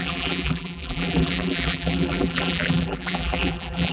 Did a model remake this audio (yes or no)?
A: yes